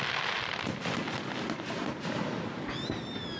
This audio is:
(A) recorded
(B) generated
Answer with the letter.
A